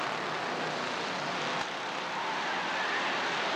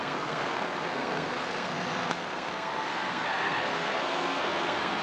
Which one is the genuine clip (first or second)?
first